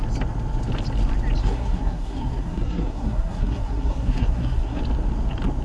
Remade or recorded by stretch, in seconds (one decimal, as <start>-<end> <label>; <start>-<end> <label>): 0.0-1.4 recorded; 1.4-4.8 remade; 4.8-5.6 recorded

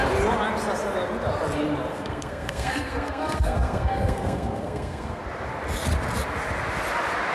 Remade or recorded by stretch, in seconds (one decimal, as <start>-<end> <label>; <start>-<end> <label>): 0.0-1.9 recorded; 1.9-5.2 remade; 5.2-7.3 recorded

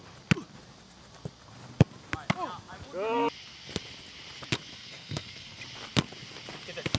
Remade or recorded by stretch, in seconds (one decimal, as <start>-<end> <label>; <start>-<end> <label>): 0.0-4.7 recorded; 4.7-5.6 remade; 5.6-7.0 recorded